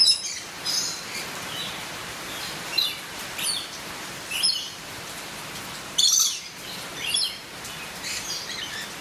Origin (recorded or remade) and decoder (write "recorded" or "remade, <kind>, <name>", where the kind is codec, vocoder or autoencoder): remade, vocoder, BigVGAN v2